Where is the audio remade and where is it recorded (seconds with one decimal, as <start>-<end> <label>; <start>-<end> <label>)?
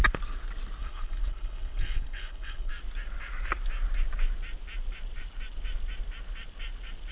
0.0-0.8 recorded; 0.8-2.7 remade; 2.7-7.1 recorded